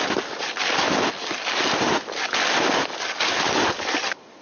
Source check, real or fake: real